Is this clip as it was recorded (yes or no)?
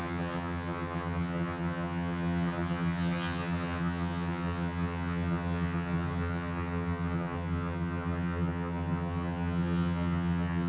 no